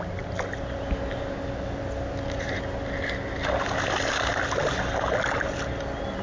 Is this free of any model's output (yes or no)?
yes